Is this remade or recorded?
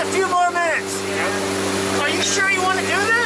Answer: recorded